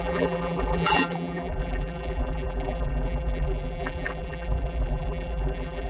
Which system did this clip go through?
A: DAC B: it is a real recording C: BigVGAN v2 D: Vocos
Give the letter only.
C